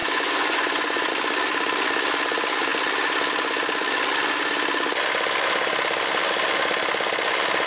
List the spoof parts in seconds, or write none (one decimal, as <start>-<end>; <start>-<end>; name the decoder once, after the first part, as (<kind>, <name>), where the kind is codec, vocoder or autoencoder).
0.0-1.1 (vocoder, Vocos)